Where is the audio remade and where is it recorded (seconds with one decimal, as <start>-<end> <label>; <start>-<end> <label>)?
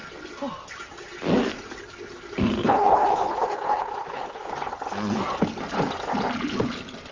0.0-2.6 recorded; 2.6-4.5 remade; 4.5-7.1 recorded